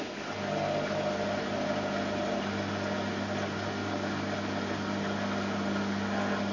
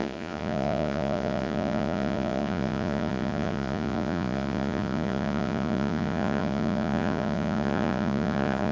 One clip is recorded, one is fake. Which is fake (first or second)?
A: second